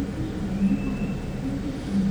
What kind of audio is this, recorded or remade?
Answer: recorded